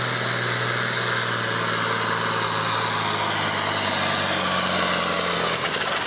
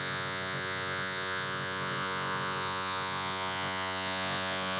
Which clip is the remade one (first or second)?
second